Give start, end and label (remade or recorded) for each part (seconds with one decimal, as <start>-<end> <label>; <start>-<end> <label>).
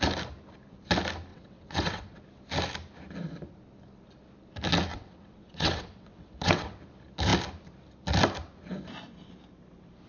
0.0-1.3 recorded; 1.3-2.2 remade; 2.2-4.9 recorded; 4.9-6.8 remade; 6.8-10.1 recorded